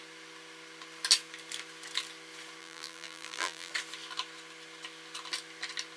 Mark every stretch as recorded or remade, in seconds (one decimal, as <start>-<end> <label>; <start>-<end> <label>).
0.0-2.6 recorded; 2.6-3.7 remade; 3.7-6.0 recorded